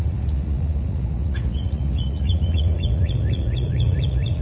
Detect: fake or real fake